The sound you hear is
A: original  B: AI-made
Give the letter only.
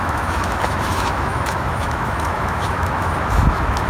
B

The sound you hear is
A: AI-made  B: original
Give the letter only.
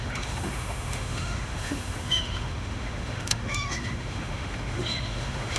A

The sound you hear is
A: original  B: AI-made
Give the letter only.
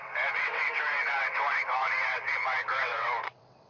B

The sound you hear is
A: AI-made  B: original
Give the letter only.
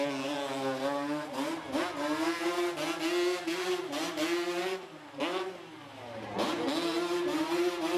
B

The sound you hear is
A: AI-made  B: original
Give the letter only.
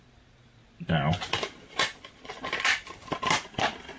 B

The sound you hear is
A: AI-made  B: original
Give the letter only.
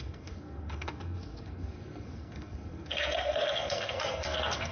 A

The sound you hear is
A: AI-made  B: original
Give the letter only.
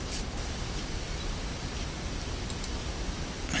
B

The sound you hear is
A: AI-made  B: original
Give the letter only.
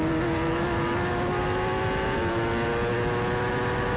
B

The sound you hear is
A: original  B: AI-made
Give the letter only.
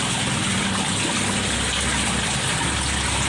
A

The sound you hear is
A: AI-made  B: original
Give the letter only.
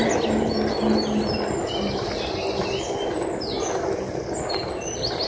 B